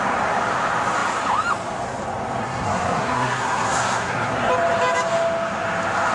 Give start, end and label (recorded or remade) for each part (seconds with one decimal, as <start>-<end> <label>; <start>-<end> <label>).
0.0-2.4 recorded; 2.4-4.5 remade; 4.5-6.1 recorded